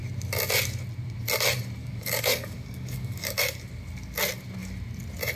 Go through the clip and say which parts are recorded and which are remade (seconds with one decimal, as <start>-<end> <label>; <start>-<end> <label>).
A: 0.0-1.8 recorded; 1.8-3.4 remade; 3.4-5.4 recorded